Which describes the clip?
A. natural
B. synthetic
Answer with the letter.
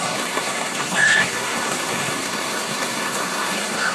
B